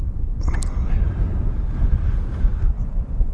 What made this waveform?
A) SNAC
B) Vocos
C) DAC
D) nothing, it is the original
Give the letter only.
D